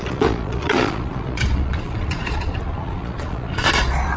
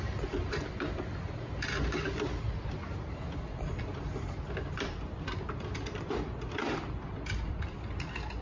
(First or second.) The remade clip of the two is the first